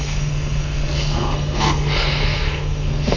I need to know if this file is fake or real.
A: fake